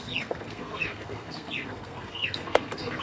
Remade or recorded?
remade